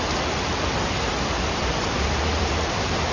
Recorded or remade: remade